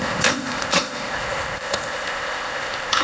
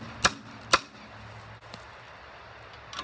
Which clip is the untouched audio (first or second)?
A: second